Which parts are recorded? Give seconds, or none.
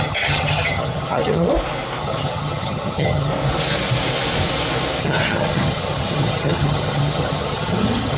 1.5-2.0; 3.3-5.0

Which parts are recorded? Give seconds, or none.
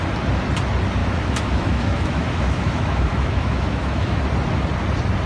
0.0-1.0; 4.2-5.3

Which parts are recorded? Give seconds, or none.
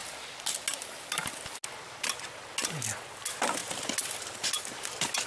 0.0-5.3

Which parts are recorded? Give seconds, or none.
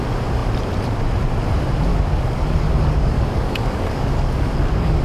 0.0-1.9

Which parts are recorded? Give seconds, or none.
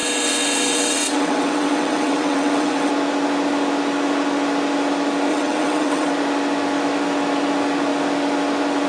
2.9-5.3; 6.1-8.9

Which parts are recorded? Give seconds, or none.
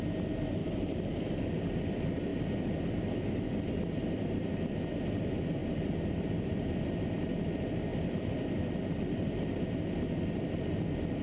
0.0-0.6; 1.6-5.6; 7.1-7.9; 9.6-11.2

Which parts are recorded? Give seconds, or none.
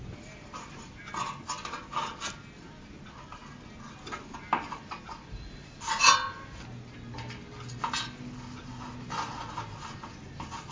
0.0-10.7